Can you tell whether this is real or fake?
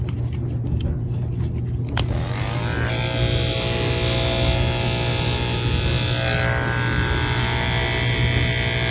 real